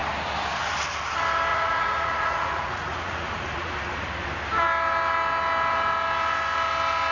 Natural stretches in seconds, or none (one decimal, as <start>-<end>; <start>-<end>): 0.0-1.5; 3.7-7.1